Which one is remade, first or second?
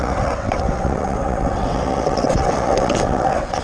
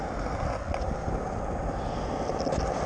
first